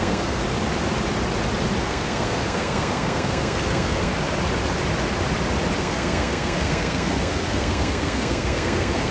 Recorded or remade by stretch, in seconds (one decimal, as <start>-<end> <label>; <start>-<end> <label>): 0.0-0.4 remade; 0.4-1.8 recorded; 1.8-4.1 remade; 4.1-5.8 recorded; 5.8-9.1 remade